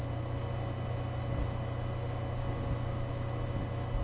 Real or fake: real